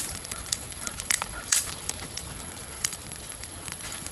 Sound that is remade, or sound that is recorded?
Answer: remade